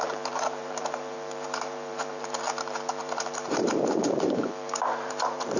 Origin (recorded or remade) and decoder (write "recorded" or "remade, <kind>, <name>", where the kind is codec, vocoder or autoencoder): remade, vocoder, BigVGAN v2